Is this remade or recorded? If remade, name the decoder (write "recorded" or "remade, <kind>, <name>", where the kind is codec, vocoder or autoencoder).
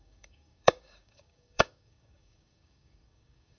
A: remade, codec, DAC